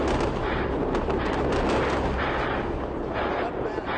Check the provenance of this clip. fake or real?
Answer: real